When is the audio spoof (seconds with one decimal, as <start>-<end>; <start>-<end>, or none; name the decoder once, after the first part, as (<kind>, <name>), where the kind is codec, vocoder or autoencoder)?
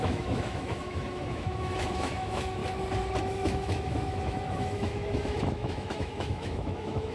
0.0-2.6 (autoencoder, DAC-VAE); 3.2-7.1